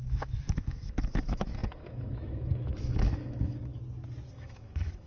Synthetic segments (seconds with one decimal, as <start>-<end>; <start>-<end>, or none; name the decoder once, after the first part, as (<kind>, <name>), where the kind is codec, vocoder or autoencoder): 0.0-3.7 (autoencoder, DAC-VAE); 4.3-5.1